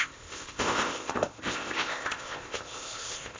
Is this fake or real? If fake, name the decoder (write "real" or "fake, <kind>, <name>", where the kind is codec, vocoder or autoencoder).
fake, codec, ZipCodec